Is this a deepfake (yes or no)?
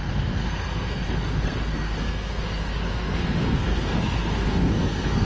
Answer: yes